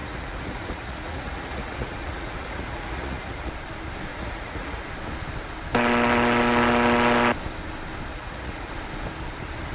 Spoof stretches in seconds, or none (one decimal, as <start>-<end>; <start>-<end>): 0.0-3.5; 4.1-4.8; 8.1-8.7